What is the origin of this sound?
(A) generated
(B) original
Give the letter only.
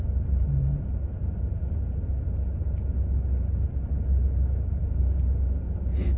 B